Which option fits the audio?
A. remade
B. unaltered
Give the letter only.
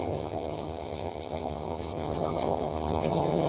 A